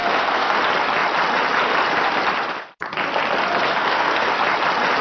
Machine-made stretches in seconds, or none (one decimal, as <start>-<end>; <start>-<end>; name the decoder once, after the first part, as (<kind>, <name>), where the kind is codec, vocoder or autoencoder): 0.0-0.6 (codec, SNAC); 3.8-4.3